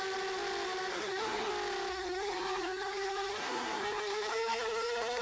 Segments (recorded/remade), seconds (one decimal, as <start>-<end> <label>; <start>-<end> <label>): 0.0-0.9 recorded; 0.9-1.5 remade; 1.5-1.9 recorded; 1.9-5.2 remade